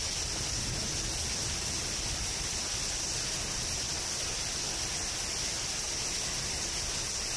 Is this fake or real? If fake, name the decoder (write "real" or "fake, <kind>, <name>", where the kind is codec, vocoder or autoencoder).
real